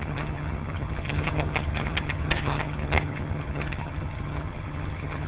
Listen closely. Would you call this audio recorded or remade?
remade